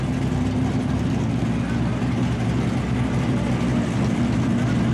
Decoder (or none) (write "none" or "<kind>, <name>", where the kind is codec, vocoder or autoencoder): none